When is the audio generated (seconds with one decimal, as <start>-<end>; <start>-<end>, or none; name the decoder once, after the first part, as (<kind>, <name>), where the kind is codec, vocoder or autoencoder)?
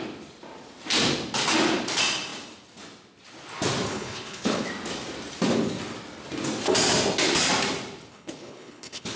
3.9-4.7 (codec, HILCodec); 8.1-9.2